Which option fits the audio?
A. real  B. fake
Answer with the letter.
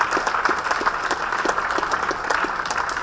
A